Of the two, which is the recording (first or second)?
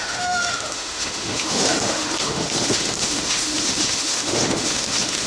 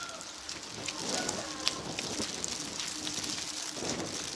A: second